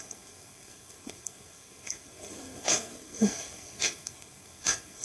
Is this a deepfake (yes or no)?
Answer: yes